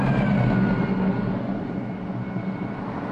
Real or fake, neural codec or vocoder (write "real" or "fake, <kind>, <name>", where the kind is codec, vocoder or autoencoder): real